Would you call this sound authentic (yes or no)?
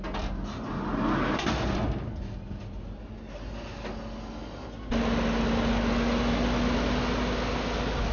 yes